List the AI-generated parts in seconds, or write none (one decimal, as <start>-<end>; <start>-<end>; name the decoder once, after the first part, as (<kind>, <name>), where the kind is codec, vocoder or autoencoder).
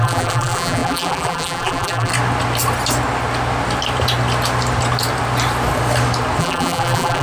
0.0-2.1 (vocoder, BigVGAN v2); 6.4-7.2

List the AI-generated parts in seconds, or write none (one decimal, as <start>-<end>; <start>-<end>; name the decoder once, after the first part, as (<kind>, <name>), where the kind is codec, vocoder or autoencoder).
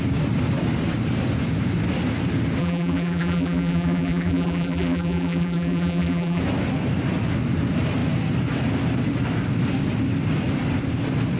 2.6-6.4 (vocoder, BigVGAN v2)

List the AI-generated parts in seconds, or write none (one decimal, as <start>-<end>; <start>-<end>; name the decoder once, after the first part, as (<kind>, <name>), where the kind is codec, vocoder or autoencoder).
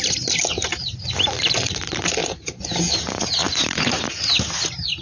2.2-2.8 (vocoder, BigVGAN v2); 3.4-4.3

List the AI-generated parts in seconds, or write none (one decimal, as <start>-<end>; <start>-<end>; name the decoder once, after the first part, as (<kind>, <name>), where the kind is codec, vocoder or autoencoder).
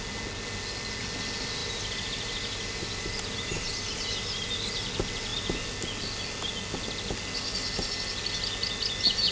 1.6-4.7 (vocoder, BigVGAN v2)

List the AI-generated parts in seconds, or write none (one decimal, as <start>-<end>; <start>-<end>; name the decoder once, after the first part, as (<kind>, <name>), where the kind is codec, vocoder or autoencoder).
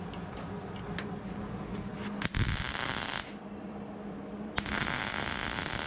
1.9-5.1 (vocoder, BigVGAN v2)